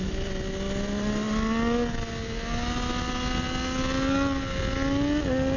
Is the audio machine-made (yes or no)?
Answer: no